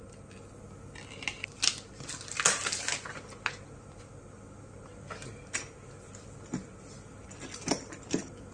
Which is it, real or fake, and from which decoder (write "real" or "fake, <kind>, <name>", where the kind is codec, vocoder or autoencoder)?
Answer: real